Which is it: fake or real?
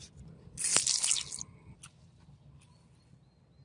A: real